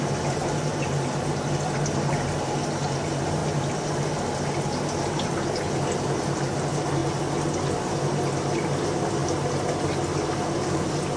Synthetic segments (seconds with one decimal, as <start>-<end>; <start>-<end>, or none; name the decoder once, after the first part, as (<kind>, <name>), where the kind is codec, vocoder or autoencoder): none